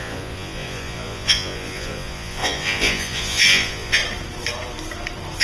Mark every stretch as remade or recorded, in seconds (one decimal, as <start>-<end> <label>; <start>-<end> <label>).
0.0-4.0 remade; 4.0-5.4 recorded